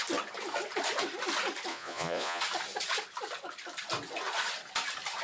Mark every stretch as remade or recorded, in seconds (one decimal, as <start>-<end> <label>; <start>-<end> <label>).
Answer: 0.0-1.7 recorded; 1.7-2.4 remade; 2.4-5.2 recorded

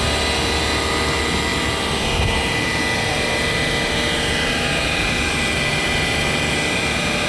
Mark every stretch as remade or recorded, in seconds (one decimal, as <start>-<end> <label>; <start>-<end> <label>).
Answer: 0.0-7.3 recorded

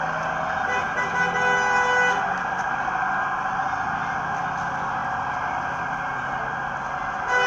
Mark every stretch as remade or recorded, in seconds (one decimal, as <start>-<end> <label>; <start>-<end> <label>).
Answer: 0.0-7.5 recorded